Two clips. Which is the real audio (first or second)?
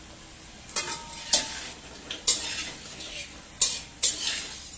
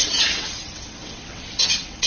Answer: first